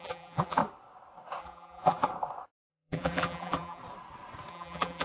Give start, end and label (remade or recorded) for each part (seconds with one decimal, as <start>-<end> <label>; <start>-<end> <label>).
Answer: 0.0-0.6 remade; 0.6-1.4 recorded; 1.4-2.1 remade; 2.1-2.7 recorded; 2.7-3.8 remade; 3.8-4.5 recorded; 4.5-5.0 remade